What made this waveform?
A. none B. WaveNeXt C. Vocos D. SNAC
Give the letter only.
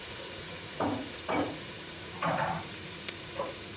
C